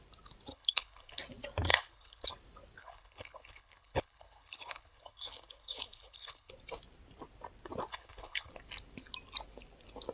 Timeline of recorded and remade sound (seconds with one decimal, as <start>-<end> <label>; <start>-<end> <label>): 0.0-0.5 recorded; 0.5-1.2 remade; 1.2-1.7 recorded; 1.7-2.3 remade; 2.3-2.8 recorded; 2.8-6.5 remade; 6.5-7.9 recorded; 7.9-8.5 remade; 8.5-10.1 recorded

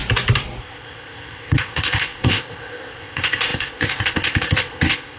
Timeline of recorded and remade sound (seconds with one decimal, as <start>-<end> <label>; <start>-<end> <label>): 0.0-0.6 recorded; 0.6-5.2 remade

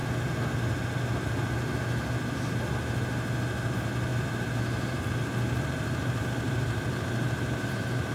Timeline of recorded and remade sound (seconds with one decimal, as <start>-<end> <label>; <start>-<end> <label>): 0.0-0.6 remade; 0.6-4.1 recorded; 4.1-8.1 remade

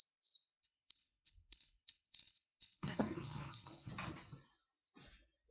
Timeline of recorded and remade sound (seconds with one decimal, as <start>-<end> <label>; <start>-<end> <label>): 0.0-0.6 recorded; 0.6-3.9 remade; 3.9-5.5 recorded

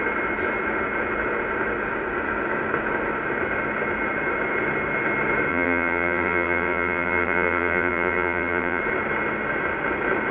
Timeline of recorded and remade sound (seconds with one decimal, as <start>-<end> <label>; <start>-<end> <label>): 0.0-5.5 recorded; 5.5-8.8 remade; 8.8-10.3 recorded